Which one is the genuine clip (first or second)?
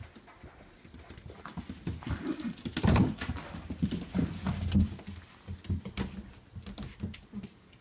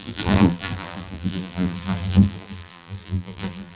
first